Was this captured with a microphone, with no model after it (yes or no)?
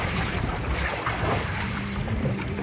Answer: no